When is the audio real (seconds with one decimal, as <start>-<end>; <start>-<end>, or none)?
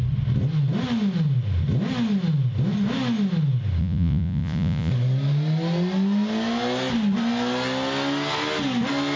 0.0-3.8; 4.9-9.2